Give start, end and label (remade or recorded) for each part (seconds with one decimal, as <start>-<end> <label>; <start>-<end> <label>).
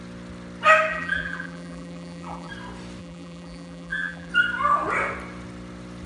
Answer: 0.0-0.9 recorded; 0.9-2.5 remade; 2.5-3.0 recorded; 3.0-4.3 remade; 4.3-6.1 recorded